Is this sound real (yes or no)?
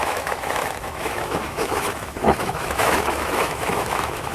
no